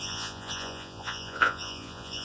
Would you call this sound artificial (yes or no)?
yes